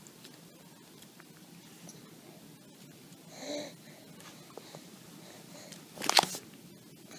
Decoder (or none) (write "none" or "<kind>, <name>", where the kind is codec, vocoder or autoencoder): none